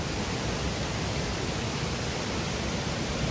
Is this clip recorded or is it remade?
recorded